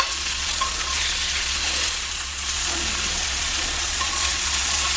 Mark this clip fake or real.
fake